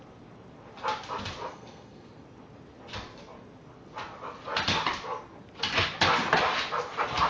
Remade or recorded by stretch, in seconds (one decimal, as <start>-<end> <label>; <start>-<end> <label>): 0.0-1.4 recorded; 1.4-2.1 remade; 2.1-7.3 recorded